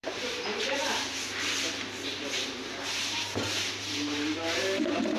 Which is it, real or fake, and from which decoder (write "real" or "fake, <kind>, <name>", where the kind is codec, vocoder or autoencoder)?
fake, vocoder, BigVGAN v2